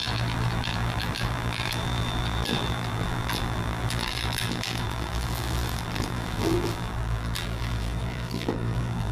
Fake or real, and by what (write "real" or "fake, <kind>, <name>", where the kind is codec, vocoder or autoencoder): fake, vocoder, BigVGAN v2